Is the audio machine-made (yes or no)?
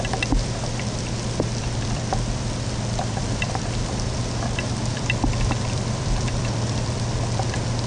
yes